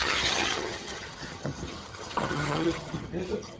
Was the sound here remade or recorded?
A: remade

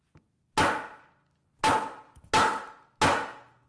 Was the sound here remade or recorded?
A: recorded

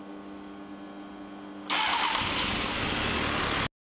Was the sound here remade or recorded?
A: recorded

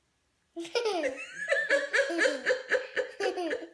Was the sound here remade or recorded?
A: recorded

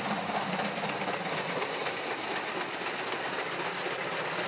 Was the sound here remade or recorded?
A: recorded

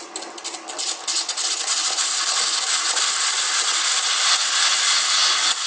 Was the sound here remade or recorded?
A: recorded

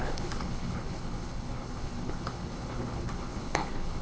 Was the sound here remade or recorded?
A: remade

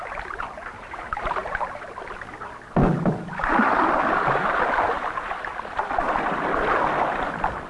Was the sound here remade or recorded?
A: recorded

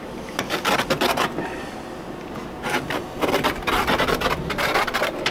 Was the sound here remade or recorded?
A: recorded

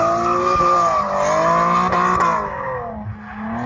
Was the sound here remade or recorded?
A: recorded